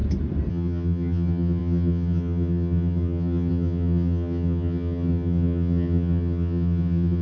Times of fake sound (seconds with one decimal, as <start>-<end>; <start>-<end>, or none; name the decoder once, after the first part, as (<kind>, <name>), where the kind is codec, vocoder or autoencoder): 0.5-7.2 (vocoder, HiFi-GAN)